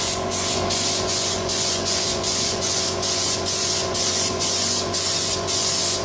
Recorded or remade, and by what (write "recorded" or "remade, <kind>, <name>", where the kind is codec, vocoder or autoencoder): remade, vocoder, Vocos